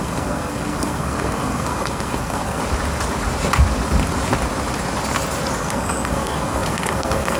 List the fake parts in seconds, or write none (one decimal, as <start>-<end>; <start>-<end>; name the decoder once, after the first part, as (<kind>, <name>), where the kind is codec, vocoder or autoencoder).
0.0-2.6 (codec, SNAC); 5.6-7.4